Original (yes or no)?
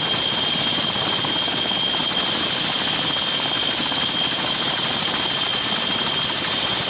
yes